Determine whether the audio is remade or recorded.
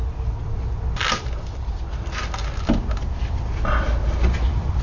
recorded